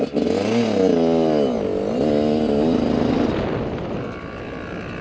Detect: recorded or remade recorded